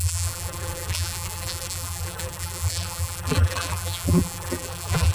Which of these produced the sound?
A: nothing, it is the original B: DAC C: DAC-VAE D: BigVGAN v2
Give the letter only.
D